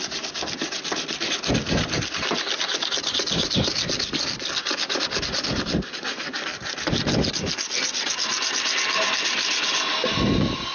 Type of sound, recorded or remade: recorded